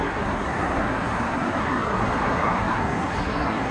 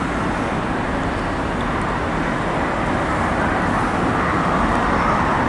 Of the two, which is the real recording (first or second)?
second